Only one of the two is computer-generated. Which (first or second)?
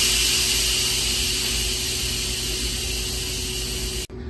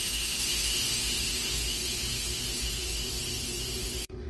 second